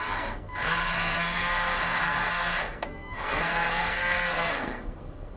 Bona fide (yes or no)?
no